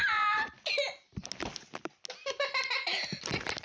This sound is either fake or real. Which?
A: real